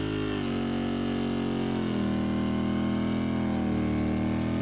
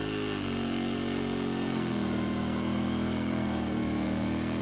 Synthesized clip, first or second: second